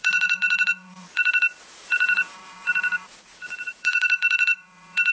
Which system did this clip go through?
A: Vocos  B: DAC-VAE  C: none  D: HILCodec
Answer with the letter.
A